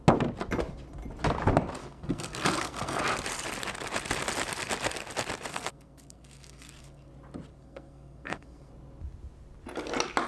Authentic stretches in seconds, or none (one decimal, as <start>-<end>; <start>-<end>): 0.0-1.8; 3.0-5.5; 7.1-7.5; 8.7-10.3